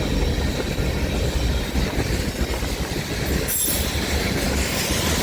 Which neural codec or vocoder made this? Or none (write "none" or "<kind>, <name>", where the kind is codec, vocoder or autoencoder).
none